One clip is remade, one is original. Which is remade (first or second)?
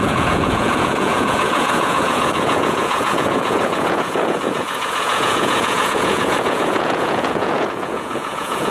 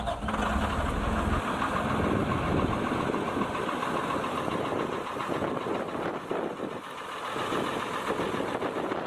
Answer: first